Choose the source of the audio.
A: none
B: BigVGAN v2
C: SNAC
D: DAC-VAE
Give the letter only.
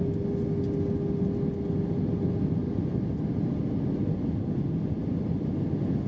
A